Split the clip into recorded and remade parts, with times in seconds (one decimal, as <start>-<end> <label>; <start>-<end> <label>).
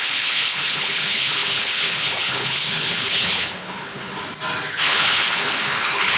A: 0.0-4.1 remade; 4.1-4.7 recorded; 4.7-6.2 remade